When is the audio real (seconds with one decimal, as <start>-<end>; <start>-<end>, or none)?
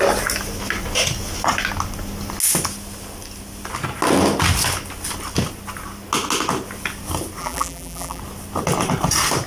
0.0-7.4; 8.2-9.5